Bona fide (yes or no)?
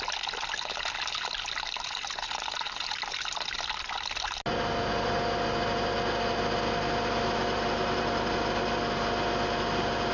yes